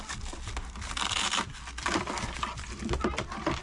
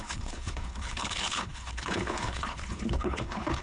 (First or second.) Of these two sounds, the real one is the first